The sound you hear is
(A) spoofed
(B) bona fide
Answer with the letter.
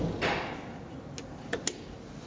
B